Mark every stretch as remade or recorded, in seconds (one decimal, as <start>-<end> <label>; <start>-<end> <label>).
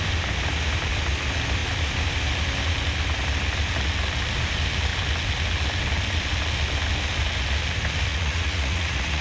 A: 0.0-8.1 recorded; 8.1-9.2 remade